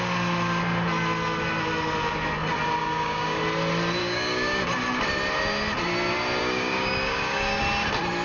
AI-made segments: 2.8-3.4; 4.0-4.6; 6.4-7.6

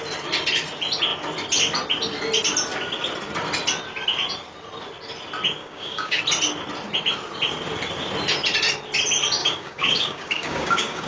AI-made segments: 5.6-6.2; 9.4-11.1

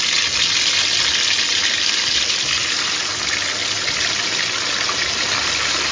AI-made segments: none

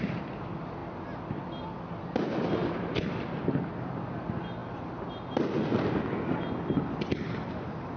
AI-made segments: none

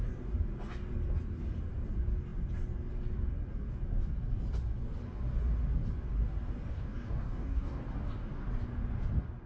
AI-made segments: 6.7-7.8